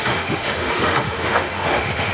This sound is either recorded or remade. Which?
remade